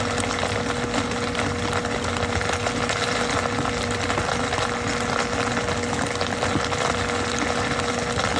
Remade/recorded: recorded